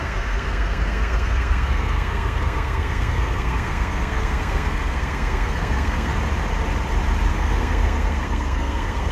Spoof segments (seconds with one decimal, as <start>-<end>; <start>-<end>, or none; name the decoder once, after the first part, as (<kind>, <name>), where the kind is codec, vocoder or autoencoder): 0.0-6.1 (codec, SNAC); 7.3-9.1